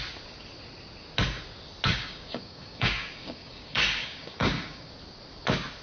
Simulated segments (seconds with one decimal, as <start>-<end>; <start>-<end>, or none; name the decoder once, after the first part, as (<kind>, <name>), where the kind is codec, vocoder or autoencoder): 1.9-4.9 (codec, DAC)